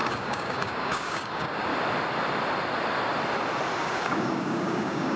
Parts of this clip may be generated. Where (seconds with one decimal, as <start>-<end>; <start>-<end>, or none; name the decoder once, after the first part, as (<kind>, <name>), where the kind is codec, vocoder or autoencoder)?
0.0-1.7 (codec, DAC); 3.8-5.2